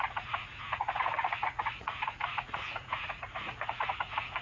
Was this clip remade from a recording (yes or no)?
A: yes